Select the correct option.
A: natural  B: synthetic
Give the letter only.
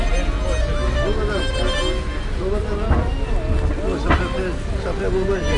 A